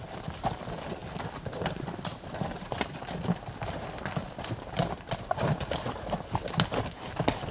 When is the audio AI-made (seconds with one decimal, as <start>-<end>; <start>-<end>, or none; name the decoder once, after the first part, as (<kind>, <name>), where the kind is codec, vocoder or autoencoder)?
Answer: 1.0-4.7 (vocoder, BigVGAN v2)

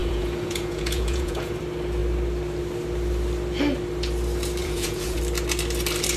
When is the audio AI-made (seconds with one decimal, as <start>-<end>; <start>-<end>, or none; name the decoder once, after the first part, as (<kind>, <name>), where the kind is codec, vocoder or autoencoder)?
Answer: 0.0-1.6 (vocoder, Vocos); 4.6-5.2

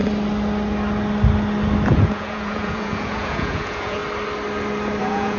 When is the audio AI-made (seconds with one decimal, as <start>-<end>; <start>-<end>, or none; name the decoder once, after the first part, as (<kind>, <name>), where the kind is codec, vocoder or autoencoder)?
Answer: 1.9-4.0 (vocoder, Vocos); 5.0-5.4

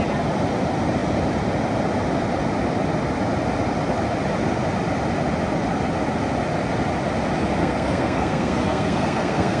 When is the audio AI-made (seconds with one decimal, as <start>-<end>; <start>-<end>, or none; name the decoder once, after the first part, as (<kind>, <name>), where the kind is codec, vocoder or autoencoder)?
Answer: 7.6-9.6 (codec, SNAC)